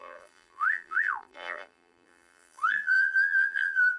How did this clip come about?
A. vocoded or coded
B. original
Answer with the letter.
A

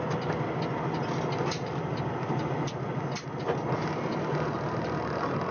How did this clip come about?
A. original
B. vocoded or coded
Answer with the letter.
A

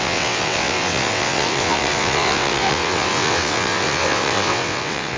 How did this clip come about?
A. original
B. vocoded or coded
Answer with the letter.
B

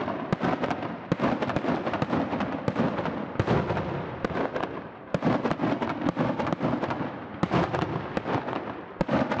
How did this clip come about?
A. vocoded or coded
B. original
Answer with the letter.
B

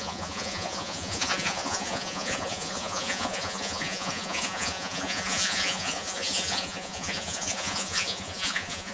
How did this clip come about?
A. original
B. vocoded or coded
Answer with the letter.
B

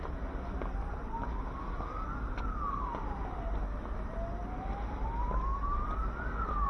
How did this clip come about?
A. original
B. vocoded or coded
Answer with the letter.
A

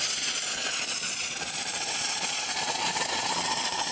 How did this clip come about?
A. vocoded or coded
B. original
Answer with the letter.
A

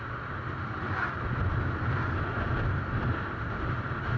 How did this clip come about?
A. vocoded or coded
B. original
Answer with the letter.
B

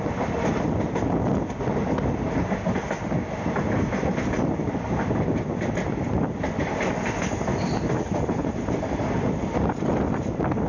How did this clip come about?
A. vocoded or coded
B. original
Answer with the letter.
B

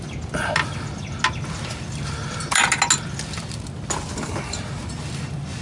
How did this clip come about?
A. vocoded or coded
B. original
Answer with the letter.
B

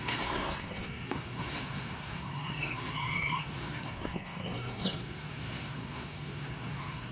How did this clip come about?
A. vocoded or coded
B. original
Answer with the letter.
A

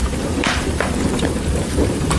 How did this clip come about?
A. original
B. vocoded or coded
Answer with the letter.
B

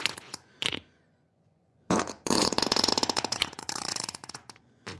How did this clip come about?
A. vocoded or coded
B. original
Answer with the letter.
A